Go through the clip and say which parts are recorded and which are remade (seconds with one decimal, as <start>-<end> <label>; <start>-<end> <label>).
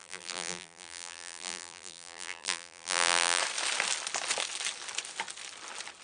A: 0.0-3.4 remade; 3.4-6.0 recorded